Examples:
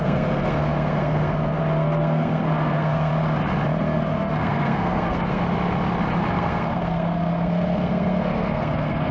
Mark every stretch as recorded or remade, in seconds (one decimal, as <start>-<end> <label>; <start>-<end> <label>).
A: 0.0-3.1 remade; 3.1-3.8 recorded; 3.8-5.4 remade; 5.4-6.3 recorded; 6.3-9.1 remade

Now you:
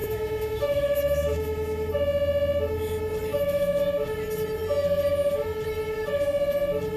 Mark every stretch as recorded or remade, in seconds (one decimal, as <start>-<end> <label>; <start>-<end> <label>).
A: 0.0-1.9 remade; 1.9-3.3 recorded; 3.3-3.8 remade; 3.8-7.0 recorded

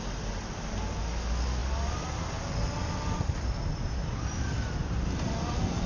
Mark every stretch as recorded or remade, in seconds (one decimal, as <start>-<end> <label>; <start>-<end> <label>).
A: 0.0-5.9 recorded

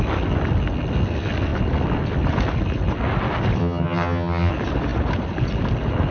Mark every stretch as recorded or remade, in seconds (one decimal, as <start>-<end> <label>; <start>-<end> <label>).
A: 0.0-3.6 recorded; 3.6-4.5 remade; 4.5-6.1 recorded

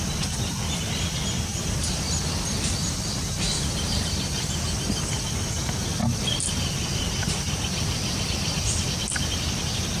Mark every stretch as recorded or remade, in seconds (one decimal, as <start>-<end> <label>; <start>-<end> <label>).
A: 0.0-1.5 recorded; 1.5-5.6 remade; 5.6-10.0 recorded